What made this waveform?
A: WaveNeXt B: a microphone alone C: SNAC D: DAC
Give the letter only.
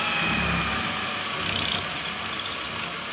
B